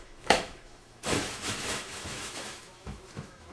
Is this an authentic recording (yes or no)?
no